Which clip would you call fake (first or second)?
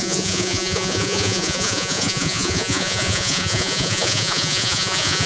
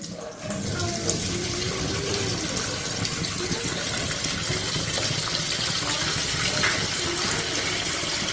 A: first